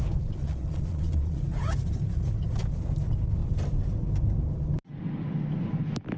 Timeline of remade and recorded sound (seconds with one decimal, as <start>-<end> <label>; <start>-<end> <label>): 0.0-0.4 recorded; 0.4-1.4 remade; 1.4-6.2 recorded